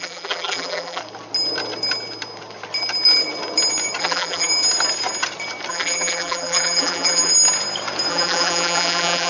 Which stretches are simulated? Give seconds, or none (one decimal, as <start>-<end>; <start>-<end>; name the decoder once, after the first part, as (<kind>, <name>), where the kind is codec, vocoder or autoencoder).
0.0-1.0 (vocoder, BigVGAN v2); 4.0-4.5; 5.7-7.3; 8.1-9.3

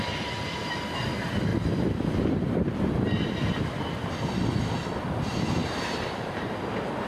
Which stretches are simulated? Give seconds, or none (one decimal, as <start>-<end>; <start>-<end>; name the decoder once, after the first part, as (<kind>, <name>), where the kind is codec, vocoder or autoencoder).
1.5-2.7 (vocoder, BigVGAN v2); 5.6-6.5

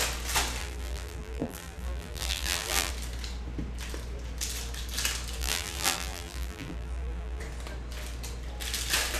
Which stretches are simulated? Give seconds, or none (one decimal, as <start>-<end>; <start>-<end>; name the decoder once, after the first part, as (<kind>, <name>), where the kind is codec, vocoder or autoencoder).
0.6-2.9 (vocoder, BigVGAN v2); 5.4-7.4

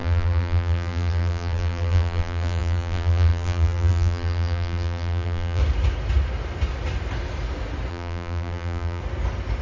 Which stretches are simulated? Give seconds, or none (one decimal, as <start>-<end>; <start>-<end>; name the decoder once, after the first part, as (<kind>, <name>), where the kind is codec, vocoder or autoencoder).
0.0-5.6 (vocoder, BigVGAN v2); 7.9-9.0

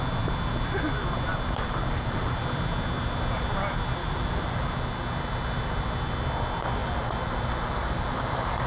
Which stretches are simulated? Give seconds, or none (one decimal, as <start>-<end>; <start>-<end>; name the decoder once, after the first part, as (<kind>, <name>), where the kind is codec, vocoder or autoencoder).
1.3-2.4 (vocoder, BigVGAN v2); 4.0-4.7; 6.8-8.7